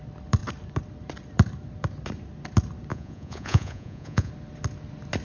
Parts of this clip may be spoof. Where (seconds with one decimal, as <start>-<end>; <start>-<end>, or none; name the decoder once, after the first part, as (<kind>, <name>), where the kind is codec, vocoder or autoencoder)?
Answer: 2.9-4.3 (vocoder, Vocos)

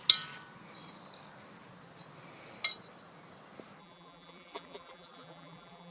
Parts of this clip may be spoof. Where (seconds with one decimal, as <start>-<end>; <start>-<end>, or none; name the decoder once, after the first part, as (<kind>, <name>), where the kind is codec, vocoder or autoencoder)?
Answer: 3.8-5.9 (vocoder, BigVGAN v2)

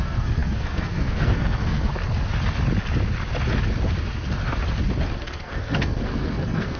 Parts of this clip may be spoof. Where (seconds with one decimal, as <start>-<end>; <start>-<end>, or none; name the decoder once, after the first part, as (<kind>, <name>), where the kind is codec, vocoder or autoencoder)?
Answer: 0.0-1.9 (codec, SNAC); 5.2-6.8

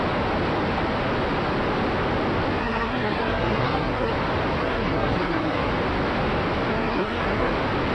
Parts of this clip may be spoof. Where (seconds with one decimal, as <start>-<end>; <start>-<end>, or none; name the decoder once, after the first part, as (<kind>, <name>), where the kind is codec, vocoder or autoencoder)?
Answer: 2.6-4.1 (codec, SNAC); 4.6-5.7; 6.7-7.5

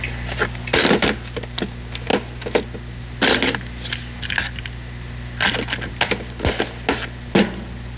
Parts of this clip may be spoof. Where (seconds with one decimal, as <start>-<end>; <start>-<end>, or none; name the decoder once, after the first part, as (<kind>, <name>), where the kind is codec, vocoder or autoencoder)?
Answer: none